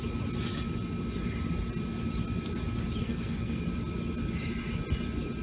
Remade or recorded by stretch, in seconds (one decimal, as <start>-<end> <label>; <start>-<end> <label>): 0.0-3.0 recorded; 3.0-3.6 remade; 3.6-5.4 recorded